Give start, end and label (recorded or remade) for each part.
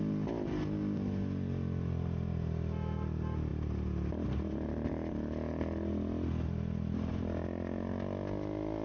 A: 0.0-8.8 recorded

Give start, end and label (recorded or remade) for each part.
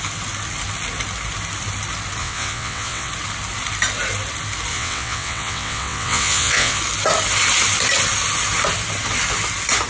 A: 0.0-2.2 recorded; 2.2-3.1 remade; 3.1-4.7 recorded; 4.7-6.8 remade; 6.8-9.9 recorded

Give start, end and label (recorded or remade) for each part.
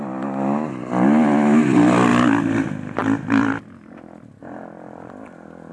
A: 0.0-5.7 recorded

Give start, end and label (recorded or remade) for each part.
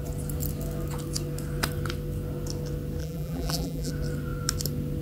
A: 0.0-3.0 recorded; 3.0-3.9 remade; 3.9-5.0 recorded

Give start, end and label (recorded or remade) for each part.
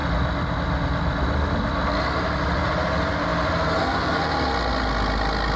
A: 0.0-5.6 recorded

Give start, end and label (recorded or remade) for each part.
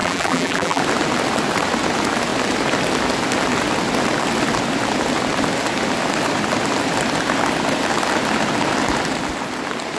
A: 0.0-0.8 remade; 0.8-10.0 recorded